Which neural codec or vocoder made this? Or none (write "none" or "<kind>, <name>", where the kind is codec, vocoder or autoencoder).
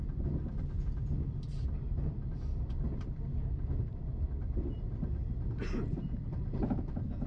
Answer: none